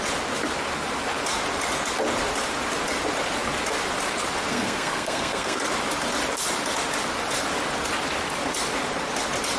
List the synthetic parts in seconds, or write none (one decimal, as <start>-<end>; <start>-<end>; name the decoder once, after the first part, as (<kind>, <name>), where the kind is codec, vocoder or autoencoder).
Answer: 4.5-5.6 (codec, SNAC)